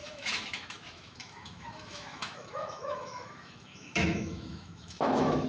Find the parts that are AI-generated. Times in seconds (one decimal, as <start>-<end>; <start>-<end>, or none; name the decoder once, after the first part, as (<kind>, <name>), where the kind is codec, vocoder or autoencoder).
0.0-5.5 (autoencoder, DAC-VAE)